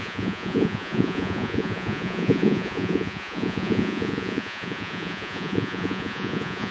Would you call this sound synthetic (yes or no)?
yes